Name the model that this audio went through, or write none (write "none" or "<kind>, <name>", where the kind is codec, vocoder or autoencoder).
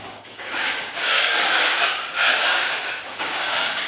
codec, DAC